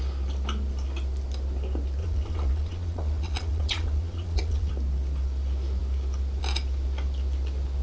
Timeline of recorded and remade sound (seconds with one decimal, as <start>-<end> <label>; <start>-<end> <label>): 0.0-2.0 recorded; 2.0-4.7 remade; 4.7-7.8 recorded